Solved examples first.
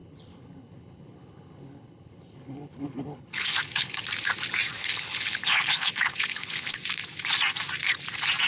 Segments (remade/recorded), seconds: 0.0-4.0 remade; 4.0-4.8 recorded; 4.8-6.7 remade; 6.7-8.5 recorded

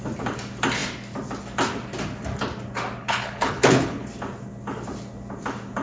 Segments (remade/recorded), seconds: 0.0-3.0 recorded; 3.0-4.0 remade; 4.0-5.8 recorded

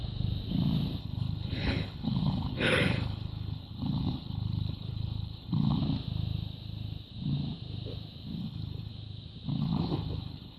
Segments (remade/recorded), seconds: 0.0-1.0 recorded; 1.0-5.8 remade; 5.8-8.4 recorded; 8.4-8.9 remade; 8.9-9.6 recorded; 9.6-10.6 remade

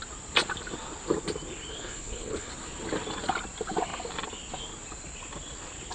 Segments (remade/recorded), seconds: 0.0-1.7 recorded; 1.7-2.5 remade; 2.5-5.9 recorded

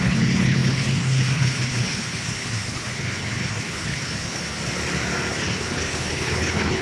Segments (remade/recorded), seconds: 0.0-4.6 remade; 4.6-5.3 recorded; 5.3-6.8 remade

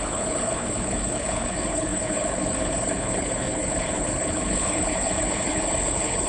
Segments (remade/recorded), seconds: 0.0-6.3 remade

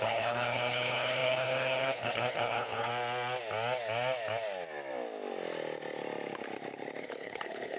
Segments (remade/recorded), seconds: 0.0-2.9 remade; 2.9-7.0 recorded; 7.0-7.8 remade

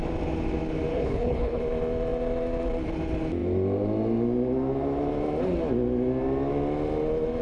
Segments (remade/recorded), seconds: 0.0-0.9 recorded; 0.9-1.6 remade; 1.6-7.4 recorded